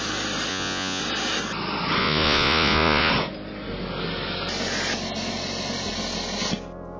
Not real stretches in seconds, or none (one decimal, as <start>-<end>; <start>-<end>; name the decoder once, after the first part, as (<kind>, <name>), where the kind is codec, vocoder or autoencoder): 0.5-1.0 (vocoder, Vocos); 2.0-3.1